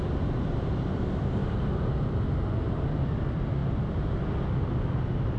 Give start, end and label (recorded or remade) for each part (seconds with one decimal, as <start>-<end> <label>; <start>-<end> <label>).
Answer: 0.0-5.4 recorded